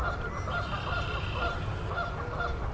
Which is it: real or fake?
real